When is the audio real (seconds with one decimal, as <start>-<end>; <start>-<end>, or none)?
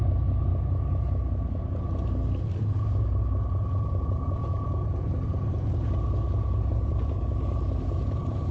0.5-4.0; 4.4-6.7